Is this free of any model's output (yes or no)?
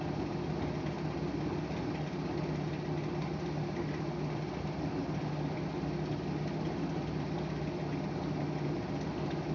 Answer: yes